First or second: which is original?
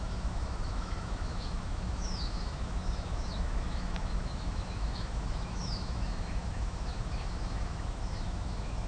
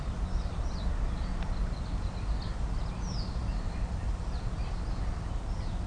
second